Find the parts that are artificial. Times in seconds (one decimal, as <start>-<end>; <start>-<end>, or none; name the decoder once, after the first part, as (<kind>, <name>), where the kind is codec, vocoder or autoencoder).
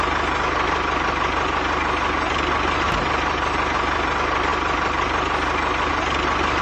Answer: none